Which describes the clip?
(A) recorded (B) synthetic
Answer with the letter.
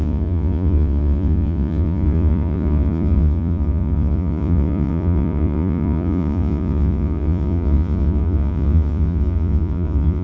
B